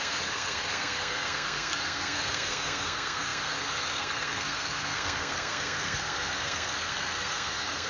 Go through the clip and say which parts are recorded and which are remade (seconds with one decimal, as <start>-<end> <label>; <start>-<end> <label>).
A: 0.0-7.9 remade